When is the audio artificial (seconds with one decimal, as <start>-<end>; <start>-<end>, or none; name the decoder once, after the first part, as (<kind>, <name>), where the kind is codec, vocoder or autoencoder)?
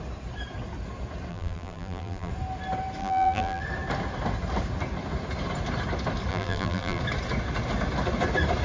1.3-2.3 (vocoder, BigVGAN v2); 3.0-3.6; 6.3-7.0